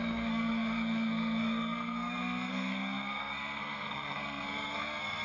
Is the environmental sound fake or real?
fake